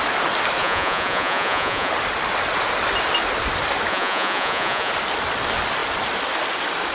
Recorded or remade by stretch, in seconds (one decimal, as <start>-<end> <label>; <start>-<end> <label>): 0.0-0.6 recorded; 0.6-1.9 remade; 1.9-3.9 recorded; 3.9-4.9 remade; 4.9-6.9 recorded